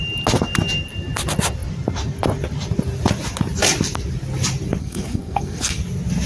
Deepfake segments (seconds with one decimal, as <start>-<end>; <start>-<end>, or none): 4.8-5.8